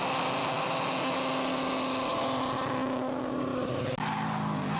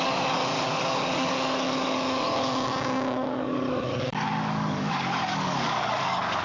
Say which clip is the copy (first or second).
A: second